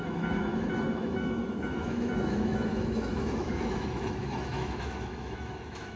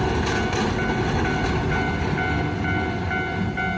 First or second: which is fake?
first